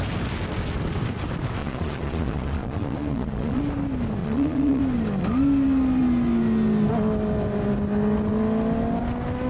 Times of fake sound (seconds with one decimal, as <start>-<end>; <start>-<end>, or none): 1.6-3.6; 4.2-4.8